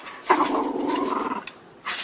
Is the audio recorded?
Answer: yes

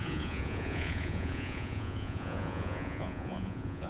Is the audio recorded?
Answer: no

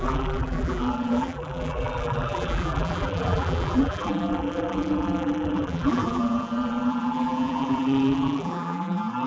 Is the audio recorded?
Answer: no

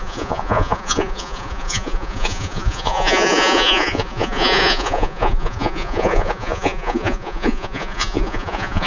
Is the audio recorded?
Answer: no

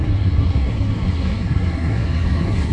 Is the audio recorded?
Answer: no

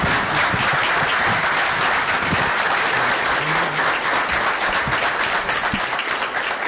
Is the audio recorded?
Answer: yes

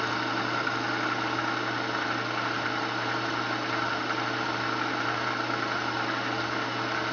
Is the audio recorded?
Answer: yes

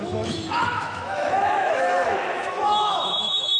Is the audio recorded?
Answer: no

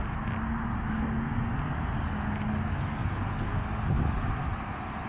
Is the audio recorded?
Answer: yes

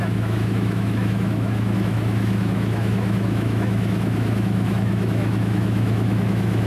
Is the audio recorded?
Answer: no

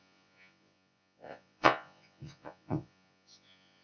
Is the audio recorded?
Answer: no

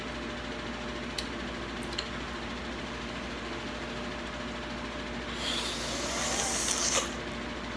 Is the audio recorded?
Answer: yes